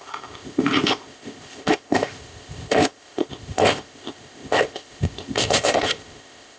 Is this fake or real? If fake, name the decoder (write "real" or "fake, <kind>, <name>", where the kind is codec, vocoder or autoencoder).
fake, codec, ZipCodec